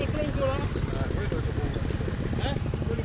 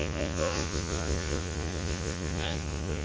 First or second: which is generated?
second